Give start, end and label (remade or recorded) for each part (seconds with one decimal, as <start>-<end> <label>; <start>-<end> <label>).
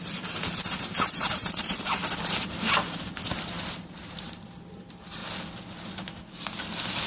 0.0-2.0 remade; 2.0-3.4 recorded; 3.4-5.2 remade; 5.2-7.1 recorded